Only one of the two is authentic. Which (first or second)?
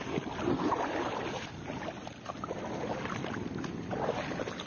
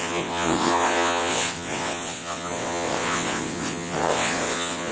first